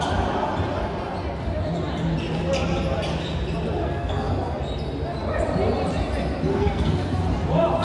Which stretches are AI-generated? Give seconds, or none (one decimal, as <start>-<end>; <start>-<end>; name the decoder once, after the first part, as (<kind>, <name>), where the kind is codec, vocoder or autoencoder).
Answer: 3.8-4.3 (codec, SNAC); 6.5-7.1